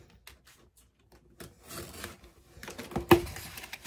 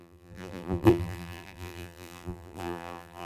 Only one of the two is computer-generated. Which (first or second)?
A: second